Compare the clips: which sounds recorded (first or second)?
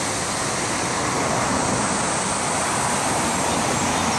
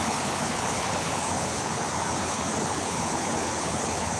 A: first